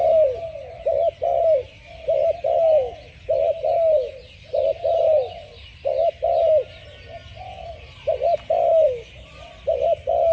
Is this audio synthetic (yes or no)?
no